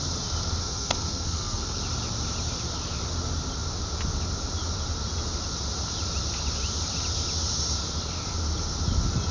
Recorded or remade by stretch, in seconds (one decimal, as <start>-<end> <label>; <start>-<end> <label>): 0.0-0.6 recorded; 0.6-1.8 remade; 1.8-9.3 recorded